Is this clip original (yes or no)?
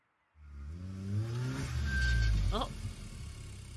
yes